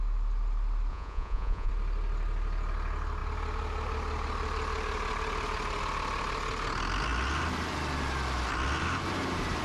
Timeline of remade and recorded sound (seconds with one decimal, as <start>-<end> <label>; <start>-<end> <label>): 0.0-0.9 recorded; 0.9-1.7 remade; 1.7-9.6 recorded